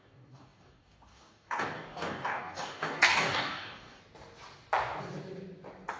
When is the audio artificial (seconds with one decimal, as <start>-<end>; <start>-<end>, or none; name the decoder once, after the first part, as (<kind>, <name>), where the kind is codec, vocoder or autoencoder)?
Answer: 0.0-4.0 (codec, DAC)